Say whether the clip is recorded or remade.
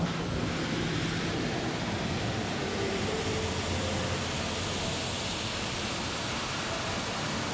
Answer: remade